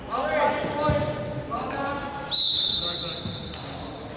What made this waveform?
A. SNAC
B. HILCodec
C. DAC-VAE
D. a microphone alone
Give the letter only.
D